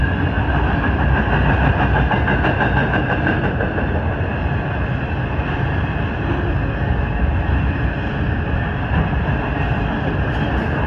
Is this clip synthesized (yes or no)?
no